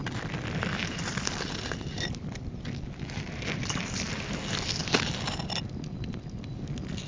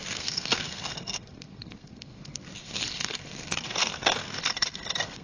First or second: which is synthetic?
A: second